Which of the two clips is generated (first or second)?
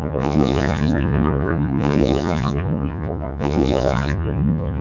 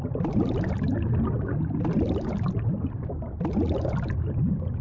first